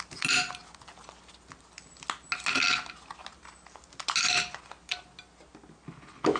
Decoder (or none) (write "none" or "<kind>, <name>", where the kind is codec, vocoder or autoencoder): none